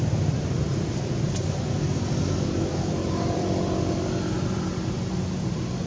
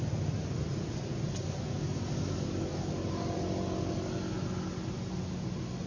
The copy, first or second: first